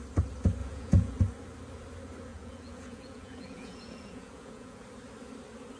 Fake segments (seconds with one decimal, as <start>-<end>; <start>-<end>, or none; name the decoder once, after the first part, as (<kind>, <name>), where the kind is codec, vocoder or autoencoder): 0.6-1.2 (vocoder, Vocos); 2.3-4.8